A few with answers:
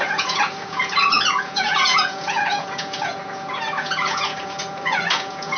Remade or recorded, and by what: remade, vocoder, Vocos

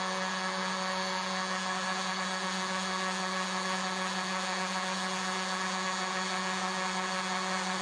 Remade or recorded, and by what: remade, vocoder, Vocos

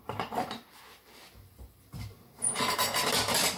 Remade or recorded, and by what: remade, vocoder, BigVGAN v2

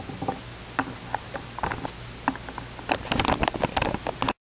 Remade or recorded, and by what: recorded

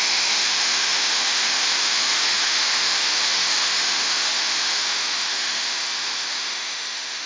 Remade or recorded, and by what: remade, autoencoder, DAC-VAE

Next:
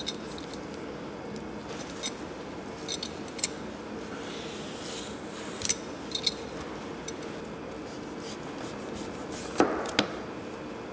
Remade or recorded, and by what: recorded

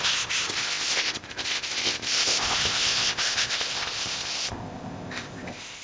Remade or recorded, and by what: remade, codec, ZipCodec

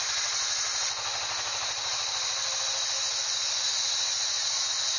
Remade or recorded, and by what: recorded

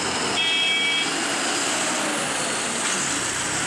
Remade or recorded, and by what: recorded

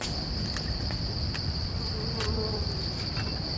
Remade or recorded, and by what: recorded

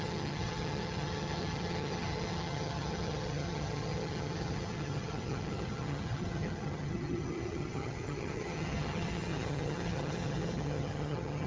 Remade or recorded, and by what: remade, vocoder, HiFi-GAN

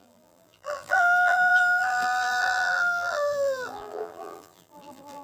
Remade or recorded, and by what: remade, vocoder, BigVGAN v2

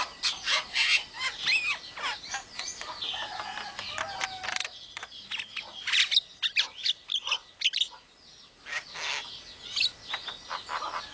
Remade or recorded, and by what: recorded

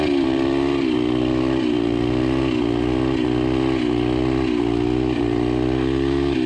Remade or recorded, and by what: recorded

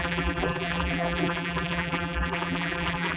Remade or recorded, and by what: remade, vocoder, BigVGAN v2